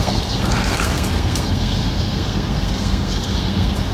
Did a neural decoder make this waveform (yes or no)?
yes